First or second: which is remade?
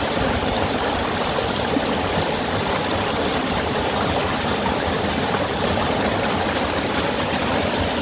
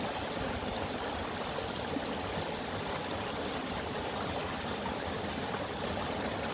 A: first